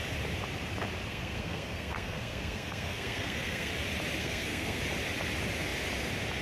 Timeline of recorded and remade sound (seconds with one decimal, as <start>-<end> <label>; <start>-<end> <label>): 0.0-1.1 recorded; 1.1-3.7 remade; 3.7-4.2 recorded; 4.2-4.8 remade; 4.8-6.4 recorded